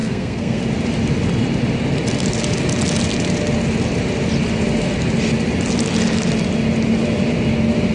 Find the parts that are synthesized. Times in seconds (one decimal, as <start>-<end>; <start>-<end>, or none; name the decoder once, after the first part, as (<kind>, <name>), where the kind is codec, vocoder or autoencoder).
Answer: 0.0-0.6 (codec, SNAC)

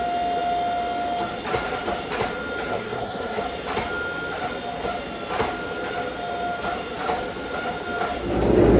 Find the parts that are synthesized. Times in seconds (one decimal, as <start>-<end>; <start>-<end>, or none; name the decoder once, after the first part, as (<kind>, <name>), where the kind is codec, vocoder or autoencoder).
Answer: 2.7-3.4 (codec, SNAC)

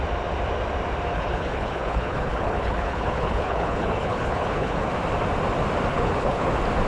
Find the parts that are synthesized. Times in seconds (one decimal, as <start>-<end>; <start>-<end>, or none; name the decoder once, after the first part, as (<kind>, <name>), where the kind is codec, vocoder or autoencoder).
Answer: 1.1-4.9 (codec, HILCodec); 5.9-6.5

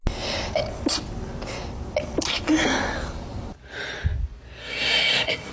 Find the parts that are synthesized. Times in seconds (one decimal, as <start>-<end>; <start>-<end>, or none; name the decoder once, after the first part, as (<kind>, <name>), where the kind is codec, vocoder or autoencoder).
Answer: 4.6-5.5 (codec, SNAC)

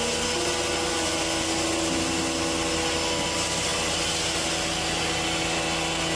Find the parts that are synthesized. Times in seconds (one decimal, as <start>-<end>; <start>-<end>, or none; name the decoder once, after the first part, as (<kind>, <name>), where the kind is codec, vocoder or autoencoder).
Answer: none

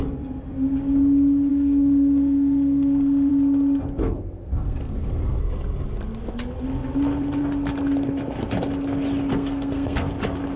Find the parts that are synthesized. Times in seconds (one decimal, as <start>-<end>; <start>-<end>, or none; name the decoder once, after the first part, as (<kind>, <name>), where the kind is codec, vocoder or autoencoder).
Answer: 1.5-3.3 (codec, SNAC); 4.0-5.4; 9.3-10.1

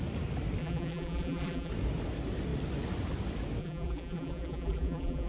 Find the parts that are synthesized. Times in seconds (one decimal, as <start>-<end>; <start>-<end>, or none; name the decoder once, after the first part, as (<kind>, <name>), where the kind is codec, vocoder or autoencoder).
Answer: 0.6-1.7 (vocoder, BigVGAN v2); 3.6-5.3